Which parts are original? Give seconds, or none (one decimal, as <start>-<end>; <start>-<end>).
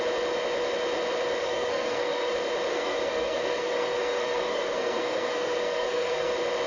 0.0-1.4; 2.3-2.7; 6.3-6.7